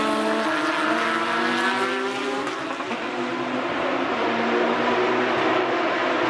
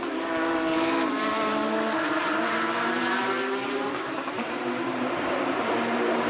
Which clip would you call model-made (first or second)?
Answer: second